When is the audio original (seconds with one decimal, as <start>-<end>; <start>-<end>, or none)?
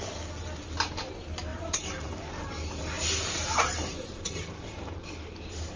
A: 0.0-1.5; 5.0-5.8